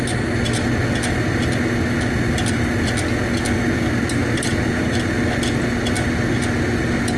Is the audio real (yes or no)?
yes